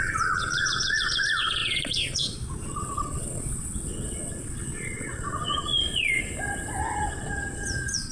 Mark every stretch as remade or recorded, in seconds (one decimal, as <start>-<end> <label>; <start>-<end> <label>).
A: 0.0-6.2 remade; 6.2-6.8 recorded; 6.8-8.1 remade